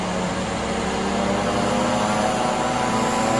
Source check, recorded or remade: recorded